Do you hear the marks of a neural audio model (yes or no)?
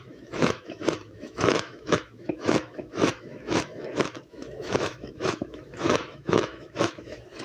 yes